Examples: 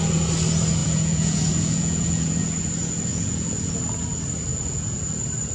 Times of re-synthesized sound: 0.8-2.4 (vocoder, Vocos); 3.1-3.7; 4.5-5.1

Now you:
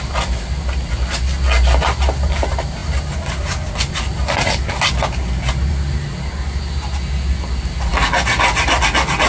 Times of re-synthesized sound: none

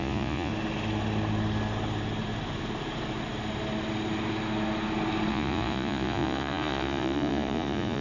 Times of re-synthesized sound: 0.0-0.5 (vocoder, Vocos); 5.3-8.0